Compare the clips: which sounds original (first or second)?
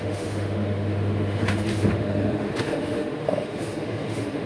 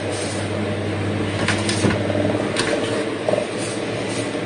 second